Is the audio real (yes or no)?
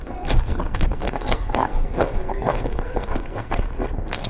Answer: no